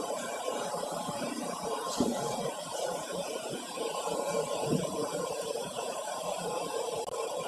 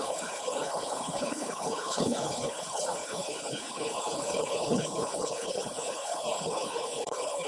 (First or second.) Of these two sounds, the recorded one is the first